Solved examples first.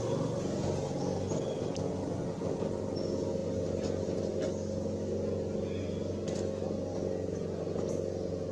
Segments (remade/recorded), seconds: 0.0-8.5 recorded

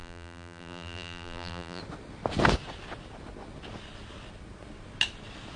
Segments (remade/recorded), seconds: 0.0-1.8 remade; 1.8-5.6 recorded

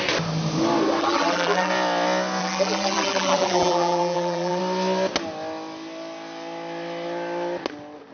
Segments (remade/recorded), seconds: 0.0-1.0 recorded; 1.0-1.7 remade; 1.7-2.4 recorded; 2.4-4.6 remade; 4.6-8.1 recorded

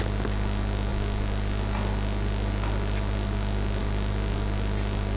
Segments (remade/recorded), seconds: 0.0-5.2 recorded

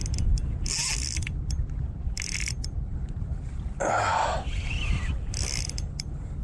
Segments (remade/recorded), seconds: 0.0-6.4 recorded

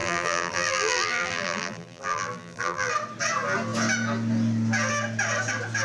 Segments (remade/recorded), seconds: 0.0-2.9 remade; 2.9-5.8 recorded

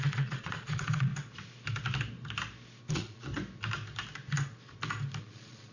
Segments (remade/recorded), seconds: 0.0-1.1 remade; 1.1-2.9 recorded; 2.9-3.3 remade; 3.3-5.2 recorded; 5.2-5.7 remade